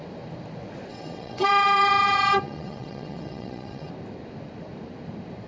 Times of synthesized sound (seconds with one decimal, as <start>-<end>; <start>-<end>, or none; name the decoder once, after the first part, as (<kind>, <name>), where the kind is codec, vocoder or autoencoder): 0.9-3.9 (vocoder, WaveNeXt)